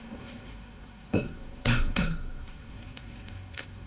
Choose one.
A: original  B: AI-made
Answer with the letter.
B